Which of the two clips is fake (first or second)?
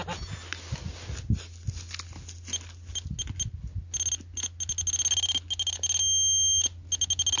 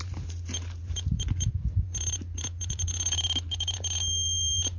second